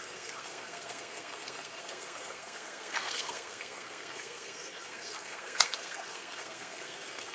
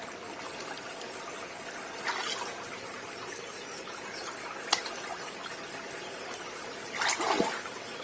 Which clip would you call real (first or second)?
second